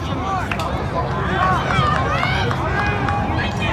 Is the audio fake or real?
real